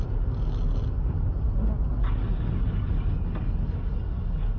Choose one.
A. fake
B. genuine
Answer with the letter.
B